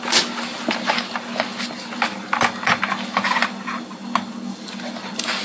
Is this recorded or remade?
recorded